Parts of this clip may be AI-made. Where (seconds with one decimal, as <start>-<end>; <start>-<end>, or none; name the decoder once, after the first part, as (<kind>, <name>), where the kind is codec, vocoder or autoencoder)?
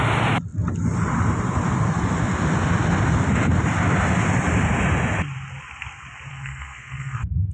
6.3-7.5 (codec, SNAC)